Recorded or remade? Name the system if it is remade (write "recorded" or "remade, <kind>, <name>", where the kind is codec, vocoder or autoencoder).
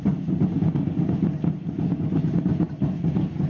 recorded